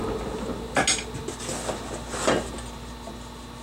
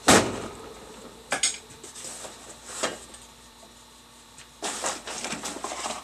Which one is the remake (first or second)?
second